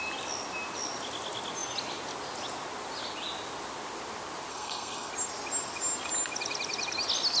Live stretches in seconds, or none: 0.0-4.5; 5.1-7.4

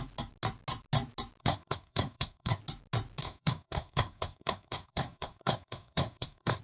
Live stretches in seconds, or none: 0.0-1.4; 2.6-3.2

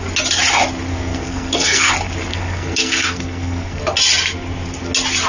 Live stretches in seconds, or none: 0.0-0.9; 1.9-2.3; 3.8-5.3

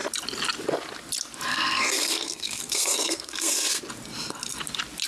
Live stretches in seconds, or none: 0.0-1.5; 3.8-5.1

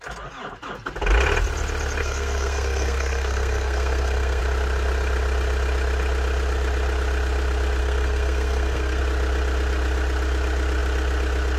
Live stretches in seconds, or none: 0.0-2.0; 4.4-7.8; 9.0-11.6

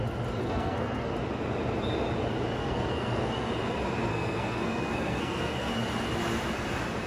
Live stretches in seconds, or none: 0.0-0.4; 1.1-2.6; 3.5-4.1; 5.7-7.1